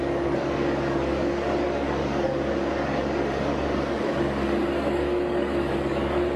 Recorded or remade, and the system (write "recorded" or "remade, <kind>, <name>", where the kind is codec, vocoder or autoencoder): remade, codec, DAC